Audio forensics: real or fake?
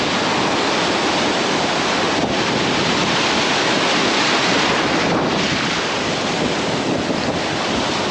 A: real